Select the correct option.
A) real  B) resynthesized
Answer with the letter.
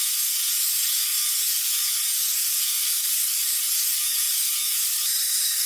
B